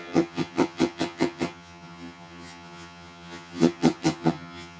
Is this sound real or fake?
fake